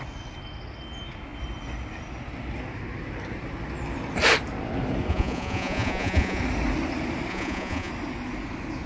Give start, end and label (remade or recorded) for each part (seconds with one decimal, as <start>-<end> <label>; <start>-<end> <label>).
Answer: 0.0-5.1 recorded; 5.1-6.4 remade; 6.4-7.3 recorded; 7.3-7.9 remade; 7.9-8.9 recorded